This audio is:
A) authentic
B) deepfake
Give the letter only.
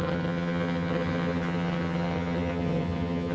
B